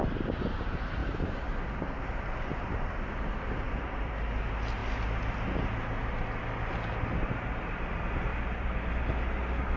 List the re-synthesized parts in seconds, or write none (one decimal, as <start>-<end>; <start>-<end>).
1.0-4.2; 8.3-8.9